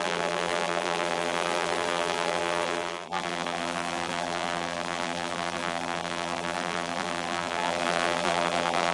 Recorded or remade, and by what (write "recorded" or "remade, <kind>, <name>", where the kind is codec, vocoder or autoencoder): remade, vocoder, BigVGAN v2